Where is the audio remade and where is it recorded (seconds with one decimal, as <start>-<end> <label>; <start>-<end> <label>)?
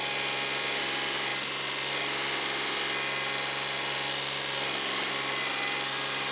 0.0-6.3 recorded